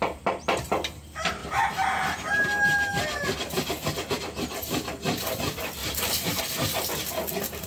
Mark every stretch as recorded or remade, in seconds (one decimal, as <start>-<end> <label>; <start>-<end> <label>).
0.0-5.8 recorded; 5.8-6.4 remade; 6.4-7.7 recorded